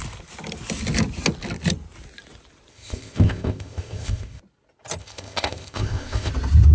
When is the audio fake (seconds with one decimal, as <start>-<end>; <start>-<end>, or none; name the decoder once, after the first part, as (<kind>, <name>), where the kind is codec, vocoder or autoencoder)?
2.7-4.4 (codec, ZipCodec); 5.0-6.3